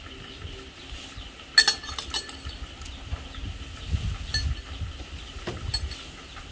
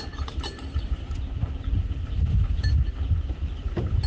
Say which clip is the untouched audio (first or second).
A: first